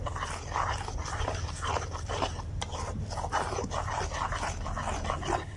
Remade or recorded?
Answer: recorded